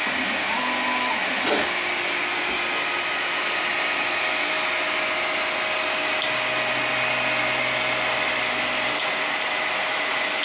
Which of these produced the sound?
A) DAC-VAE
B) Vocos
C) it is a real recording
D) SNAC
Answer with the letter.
C